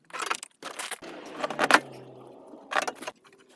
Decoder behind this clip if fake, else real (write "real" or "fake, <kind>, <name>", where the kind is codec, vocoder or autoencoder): real